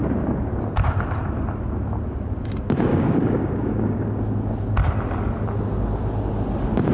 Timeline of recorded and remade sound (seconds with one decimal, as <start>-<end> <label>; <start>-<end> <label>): 0.0-2.9 recorded; 2.9-4.2 remade; 4.2-6.9 recorded